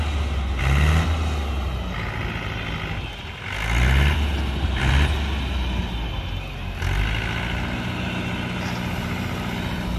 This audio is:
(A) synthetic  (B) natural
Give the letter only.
B